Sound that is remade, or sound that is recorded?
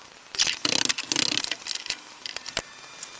recorded